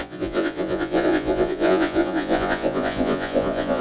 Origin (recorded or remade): remade